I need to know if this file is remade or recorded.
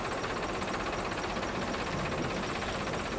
recorded